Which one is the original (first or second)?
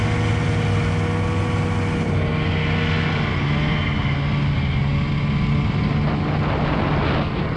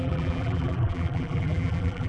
first